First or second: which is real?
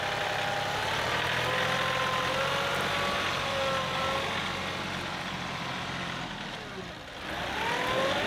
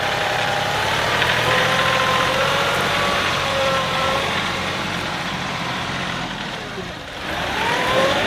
first